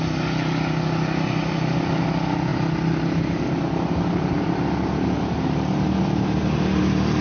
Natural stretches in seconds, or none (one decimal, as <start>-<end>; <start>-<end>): 0.0-7.2